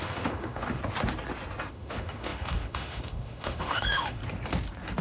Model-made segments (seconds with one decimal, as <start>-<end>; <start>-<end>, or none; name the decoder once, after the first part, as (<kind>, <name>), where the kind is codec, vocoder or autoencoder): 0.0-0.8 (autoencoder, DAC-VAE); 1.7-4.2